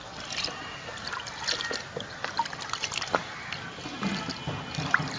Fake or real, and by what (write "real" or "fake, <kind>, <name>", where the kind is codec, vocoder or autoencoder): real